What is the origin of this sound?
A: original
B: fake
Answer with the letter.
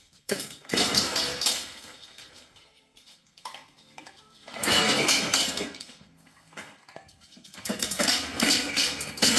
B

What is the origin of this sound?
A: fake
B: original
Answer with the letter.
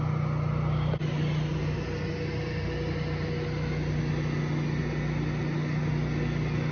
B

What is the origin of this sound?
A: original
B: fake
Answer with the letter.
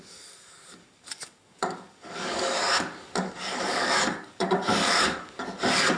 B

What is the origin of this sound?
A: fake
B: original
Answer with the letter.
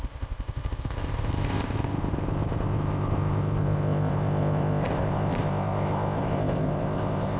A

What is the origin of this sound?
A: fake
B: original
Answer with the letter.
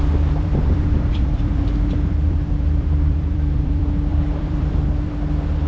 A